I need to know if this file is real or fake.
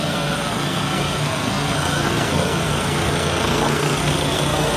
fake